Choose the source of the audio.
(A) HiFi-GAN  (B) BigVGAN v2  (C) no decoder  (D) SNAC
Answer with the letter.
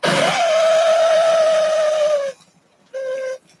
C